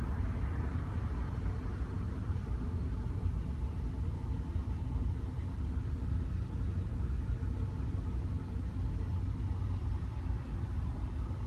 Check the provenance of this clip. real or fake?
real